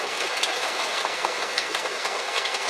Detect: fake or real fake